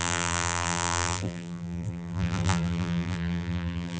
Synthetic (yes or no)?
yes